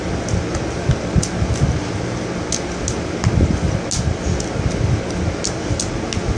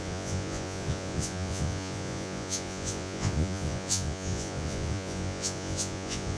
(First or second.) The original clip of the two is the first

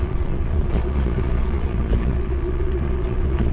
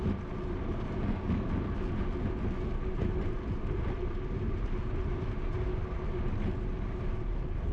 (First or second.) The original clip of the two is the second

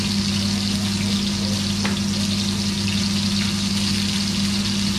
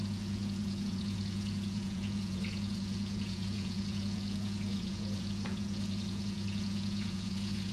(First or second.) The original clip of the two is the first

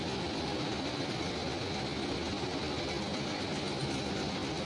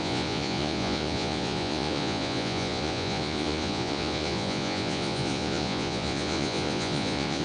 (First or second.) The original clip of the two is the first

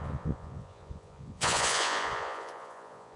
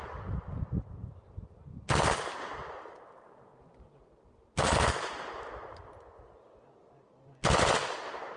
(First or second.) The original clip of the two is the second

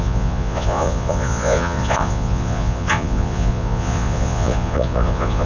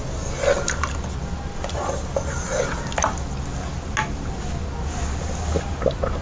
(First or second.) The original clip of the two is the second